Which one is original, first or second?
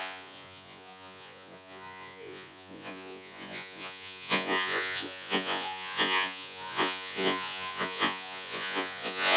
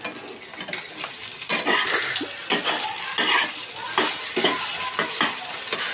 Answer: second